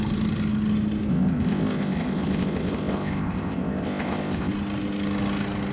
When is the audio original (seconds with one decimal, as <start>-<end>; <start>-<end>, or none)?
0.0-1.1; 4.5-5.7

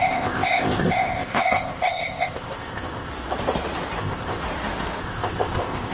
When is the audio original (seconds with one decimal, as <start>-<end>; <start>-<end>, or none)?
3.1-4.0; 4.4-5.0